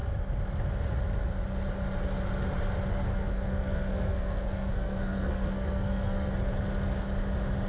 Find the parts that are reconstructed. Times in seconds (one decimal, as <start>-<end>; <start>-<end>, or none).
2.9-6.3